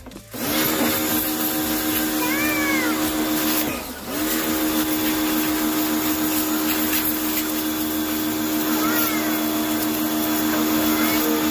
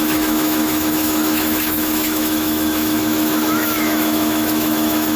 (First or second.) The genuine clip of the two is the first